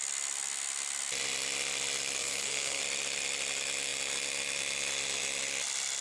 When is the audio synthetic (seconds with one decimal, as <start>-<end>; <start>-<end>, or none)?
2.2-2.8